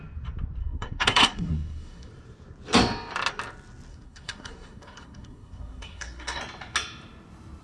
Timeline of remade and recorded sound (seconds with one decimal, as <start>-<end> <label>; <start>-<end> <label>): 0.0-0.6 recorded; 0.6-2.1 remade; 2.1-3.9 recorded; 3.9-6.4 remade; 6.4-7.6 recorded